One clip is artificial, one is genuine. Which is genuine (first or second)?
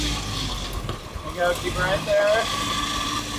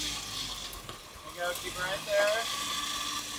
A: second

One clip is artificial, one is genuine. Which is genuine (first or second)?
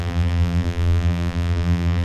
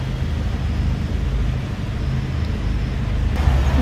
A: second